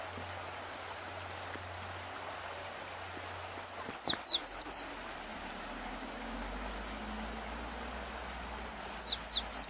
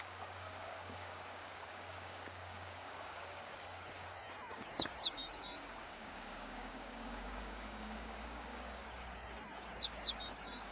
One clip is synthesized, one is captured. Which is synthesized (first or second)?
second